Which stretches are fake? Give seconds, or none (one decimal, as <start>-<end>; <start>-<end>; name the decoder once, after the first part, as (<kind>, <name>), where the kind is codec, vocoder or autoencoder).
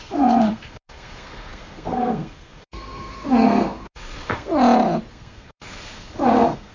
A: 0.0-4.5 (codec, SNAC); 5.1-6.7